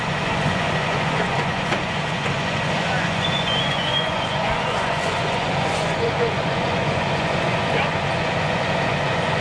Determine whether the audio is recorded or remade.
remade